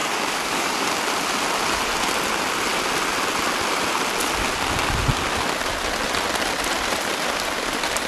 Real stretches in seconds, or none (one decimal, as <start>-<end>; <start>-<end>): 0.9-8.1